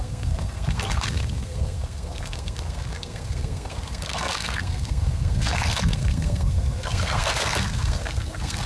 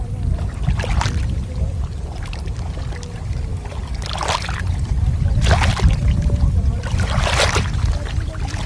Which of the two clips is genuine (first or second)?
second